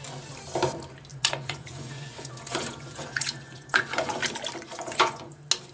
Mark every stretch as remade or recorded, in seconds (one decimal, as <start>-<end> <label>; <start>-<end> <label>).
0.0-1.1 recorded; 1.1-4.2 remade; 4.2-4.7 recorded; 4.7-5.3 remade; 5.3-5.7 recorded